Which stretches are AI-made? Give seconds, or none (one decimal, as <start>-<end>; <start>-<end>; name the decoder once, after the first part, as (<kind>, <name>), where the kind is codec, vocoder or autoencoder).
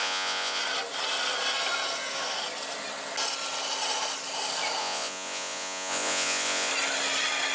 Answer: 0.0-0.6 (vocoder, Vocos); 4.8-6.7